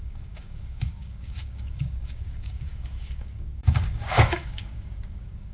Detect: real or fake fake